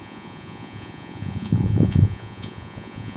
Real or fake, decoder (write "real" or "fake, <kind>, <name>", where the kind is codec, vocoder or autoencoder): fake, vocoder, Vocos